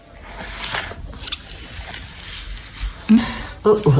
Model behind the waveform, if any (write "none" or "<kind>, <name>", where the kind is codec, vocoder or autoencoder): none